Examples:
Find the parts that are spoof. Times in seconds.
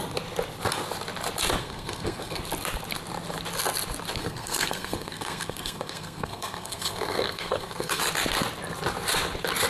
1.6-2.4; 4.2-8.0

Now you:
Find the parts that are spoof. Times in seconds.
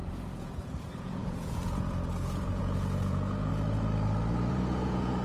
0.0-3.5; 4.5-5.2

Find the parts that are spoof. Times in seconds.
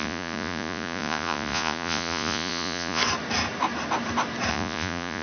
0.0-3.0; 4.5-5.2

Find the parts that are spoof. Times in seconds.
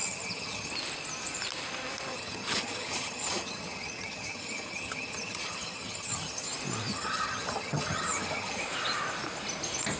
0.0-0.7; 2.1-6.5; 6.9-8.6